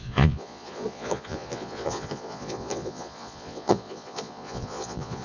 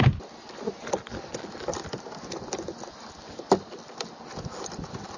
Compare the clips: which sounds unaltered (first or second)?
second